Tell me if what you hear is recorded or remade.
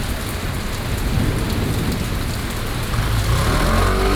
recorded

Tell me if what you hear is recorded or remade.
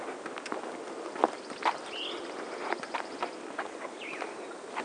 recorded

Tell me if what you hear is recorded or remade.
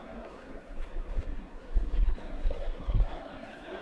remade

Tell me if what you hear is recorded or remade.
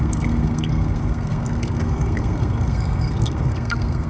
remade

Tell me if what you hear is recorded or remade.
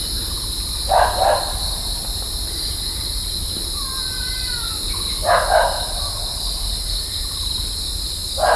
recorded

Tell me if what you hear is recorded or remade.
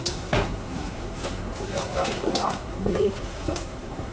remade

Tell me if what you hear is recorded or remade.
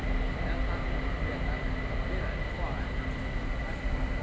recorded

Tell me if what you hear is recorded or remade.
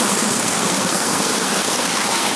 remade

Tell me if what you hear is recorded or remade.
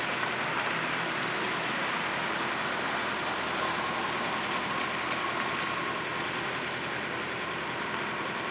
recorded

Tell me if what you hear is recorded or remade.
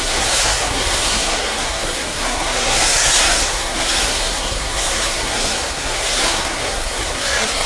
remade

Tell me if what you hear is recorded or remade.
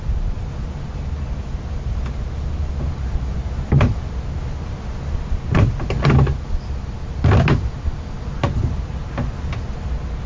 recorded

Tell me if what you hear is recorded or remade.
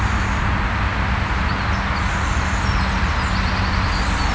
recorded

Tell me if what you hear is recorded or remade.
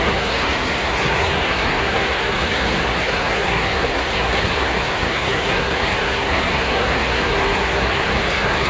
remade